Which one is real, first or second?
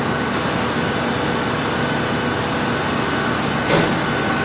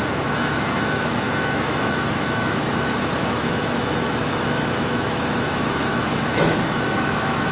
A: first